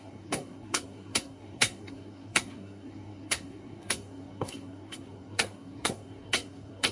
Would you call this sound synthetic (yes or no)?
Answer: yes